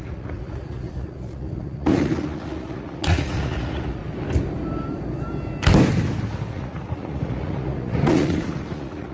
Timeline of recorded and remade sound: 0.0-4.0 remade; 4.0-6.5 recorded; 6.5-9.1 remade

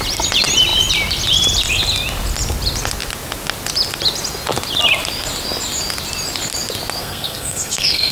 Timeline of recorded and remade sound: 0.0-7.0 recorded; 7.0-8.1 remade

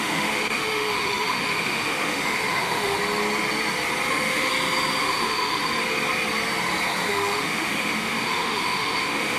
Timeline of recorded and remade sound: 0.0-3.0 remade; 3.0-4.1 recorded; 4.1-4.5 remade; 4.5-5.0 recorded; 5.0-5.6 remade; 5.6-7.1 recorded; 7.1-9.4 remade

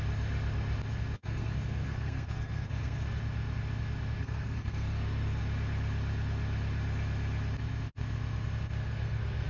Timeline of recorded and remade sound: 0.0-1.2 recorded; 1.2-3.2 remade; 3.2-4.2 recorded; 4.2-5.4 remade; 5.4-8.8 recorded; 8.8-9.5 remade

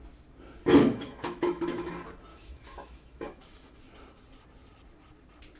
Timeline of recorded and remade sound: 0.0-0.8 recorded; 0.8-1.9 remade; 1.9-2.3 recorded; 2.3-3.8 remade; 3.8-5.6 recorded

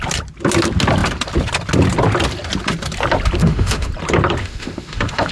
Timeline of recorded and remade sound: 0.0-3.4 recorded; 3.4-3.9 remade; 3.9-4.4 recorded; 4.4-5.3 remade

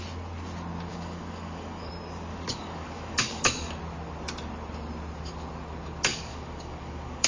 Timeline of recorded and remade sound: 0.0-0.9 recorded; 0.9-1.9 remade; 1.9-2.3 recorded; 2.3-3.7 remade; 3.7-6.1 recorded; 6.1-7.3 remade